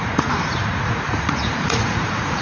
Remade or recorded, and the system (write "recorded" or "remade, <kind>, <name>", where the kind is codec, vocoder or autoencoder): remade, vocoder, Vocos